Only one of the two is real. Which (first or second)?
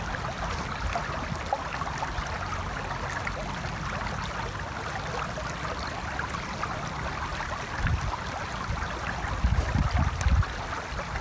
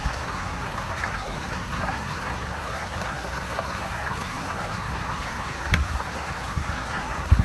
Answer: first